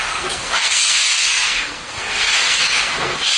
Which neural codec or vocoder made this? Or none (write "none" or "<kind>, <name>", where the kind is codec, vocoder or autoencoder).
codec, SNAC